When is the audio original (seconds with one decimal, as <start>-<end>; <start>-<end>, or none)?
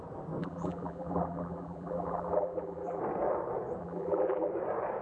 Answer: 0.0-0.4; 3.0-3.8; 4.5-5.0